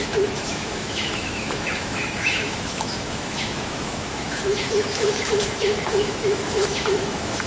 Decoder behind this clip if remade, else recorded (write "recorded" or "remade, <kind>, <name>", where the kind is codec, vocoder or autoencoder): remade, autoencoder, DAC-VAE